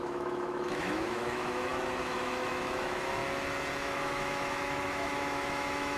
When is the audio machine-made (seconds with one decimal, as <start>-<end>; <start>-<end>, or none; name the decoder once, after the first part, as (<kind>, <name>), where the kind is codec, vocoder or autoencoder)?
0.0-3.2 (autoencoder, DAC-VAE); 3.8-6.0